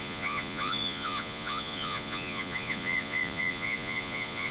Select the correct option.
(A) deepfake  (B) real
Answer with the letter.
A